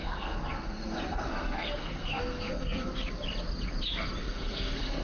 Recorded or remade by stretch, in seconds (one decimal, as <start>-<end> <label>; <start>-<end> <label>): 0.0-2.9 remade; 2.9-4.2 recorded; 4.2-5.0 remade